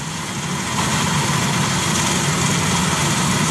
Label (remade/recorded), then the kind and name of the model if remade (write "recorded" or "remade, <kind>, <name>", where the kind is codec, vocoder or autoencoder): recorded